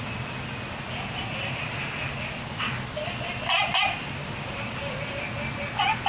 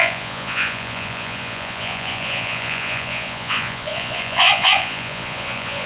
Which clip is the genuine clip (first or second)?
first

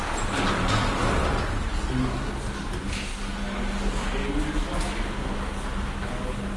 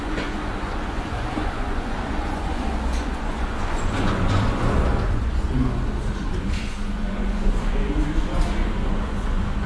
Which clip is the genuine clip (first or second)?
first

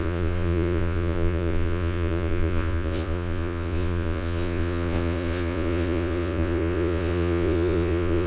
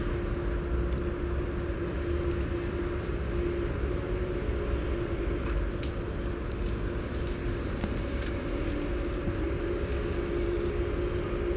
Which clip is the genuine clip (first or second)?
second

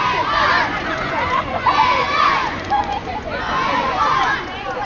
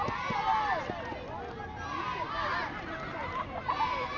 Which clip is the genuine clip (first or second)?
second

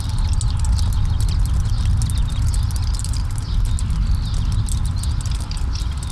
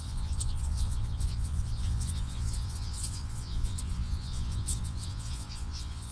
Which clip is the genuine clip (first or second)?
first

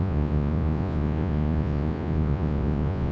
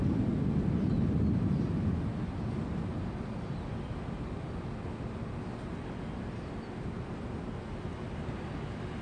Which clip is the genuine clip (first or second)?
second